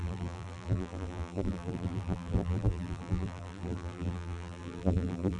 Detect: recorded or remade remade